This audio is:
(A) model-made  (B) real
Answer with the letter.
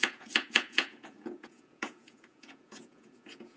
A